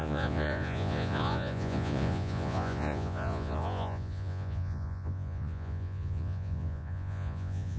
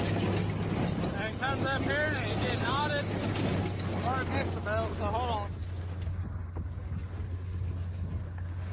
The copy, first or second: first